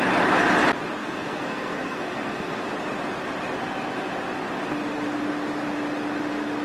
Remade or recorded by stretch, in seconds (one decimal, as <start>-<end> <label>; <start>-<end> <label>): 0.0-1.0 recorded; 1.0-2.6 remade; 2.6-6.6 recorded

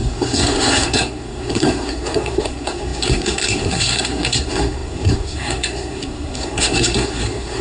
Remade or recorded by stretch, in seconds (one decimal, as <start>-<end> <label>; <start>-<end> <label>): 0.0-7.6 remade

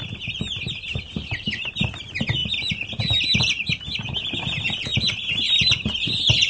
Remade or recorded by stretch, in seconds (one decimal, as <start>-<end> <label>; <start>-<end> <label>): 0.0-6.5 recorded

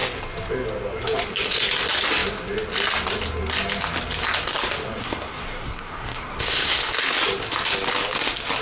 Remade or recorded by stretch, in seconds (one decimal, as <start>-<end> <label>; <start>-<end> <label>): 0.0-5.0 recorded; 5.0-6.8 remade; 6.8-8.6 recorded